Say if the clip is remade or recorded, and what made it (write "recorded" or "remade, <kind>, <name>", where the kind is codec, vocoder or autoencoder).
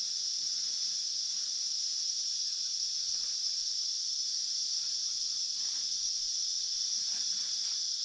remade, vocoder, Vocos